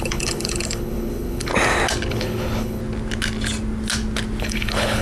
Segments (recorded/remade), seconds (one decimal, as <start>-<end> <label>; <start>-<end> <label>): 0.0-1.5 remade; 1.5-2.1 recorded; 2.1-2.8 remade; 2.8-4.4 recorded; 4.4-5.0 remade